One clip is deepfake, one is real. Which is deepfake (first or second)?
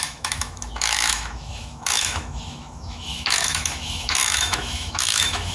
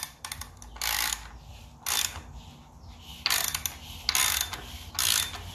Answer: first